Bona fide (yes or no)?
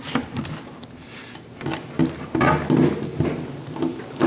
yes